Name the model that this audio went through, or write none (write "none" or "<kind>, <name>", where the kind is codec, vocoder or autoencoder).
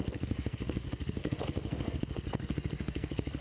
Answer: codec, SNAC